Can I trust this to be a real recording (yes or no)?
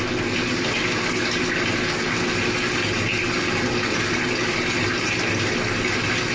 yes